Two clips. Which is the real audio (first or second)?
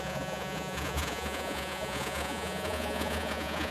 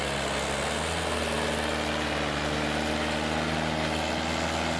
second